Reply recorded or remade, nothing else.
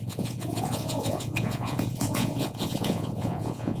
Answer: remade